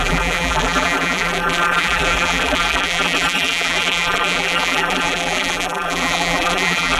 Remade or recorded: remade